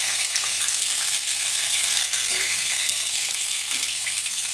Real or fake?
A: fake